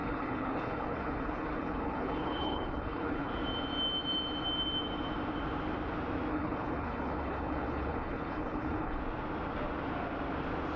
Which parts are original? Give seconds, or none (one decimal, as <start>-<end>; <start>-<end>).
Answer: 3.3-6.3; 9.0-10.8